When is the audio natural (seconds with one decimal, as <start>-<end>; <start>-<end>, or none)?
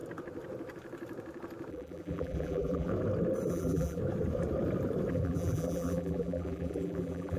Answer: 0.0-1.7; 2.9-3.5; 4.0-5.1